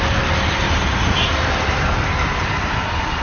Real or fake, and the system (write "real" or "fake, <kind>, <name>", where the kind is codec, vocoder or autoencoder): real